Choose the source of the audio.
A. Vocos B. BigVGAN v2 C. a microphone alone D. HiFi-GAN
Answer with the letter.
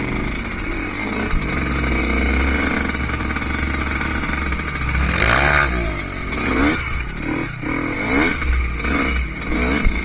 C